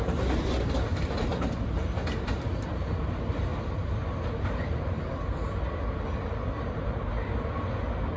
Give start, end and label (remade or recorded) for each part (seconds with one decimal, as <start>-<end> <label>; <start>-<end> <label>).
0.0-0.9 recorded; 0.9-1.8 remade; 1.8-3.5 recorded; 3.5-4.8 remade; 4.8-5.3 recorded; 5.3-7.1 remade; 7.1-8.2 recorded